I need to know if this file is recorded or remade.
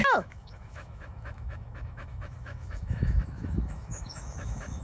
remade